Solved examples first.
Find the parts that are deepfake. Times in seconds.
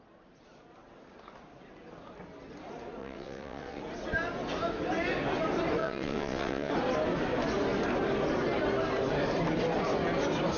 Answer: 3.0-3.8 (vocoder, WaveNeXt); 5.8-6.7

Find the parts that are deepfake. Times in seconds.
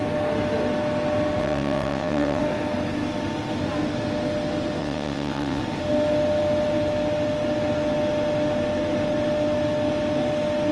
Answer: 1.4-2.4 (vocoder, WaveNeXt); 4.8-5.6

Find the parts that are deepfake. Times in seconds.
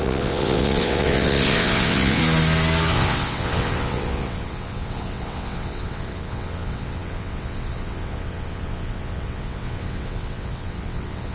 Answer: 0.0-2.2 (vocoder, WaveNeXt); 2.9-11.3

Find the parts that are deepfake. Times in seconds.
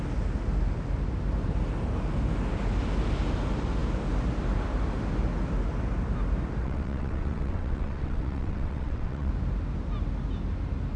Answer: 6.6-9.3 (vocoder, WaveNeXt)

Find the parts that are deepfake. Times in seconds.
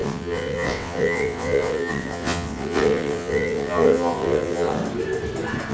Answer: 0.0-4.8 (vocoder, WaveNeXt)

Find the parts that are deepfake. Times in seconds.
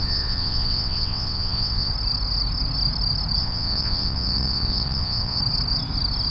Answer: 0.0-1.9 (vocoder, WaveNeXt); 3.4-5.4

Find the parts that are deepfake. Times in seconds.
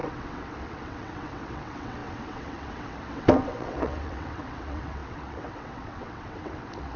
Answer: 0.0-7.0 (vocoder, WaveNeXt)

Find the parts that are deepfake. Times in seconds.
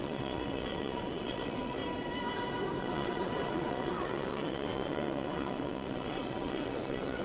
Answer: 0.0-1.8 (vocoder, WaveNeXt); 2.8-7.2